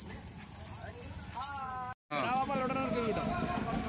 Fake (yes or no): no